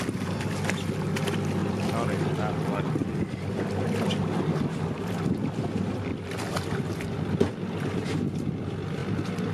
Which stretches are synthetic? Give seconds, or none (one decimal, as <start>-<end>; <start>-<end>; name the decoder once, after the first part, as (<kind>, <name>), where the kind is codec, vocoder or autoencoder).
none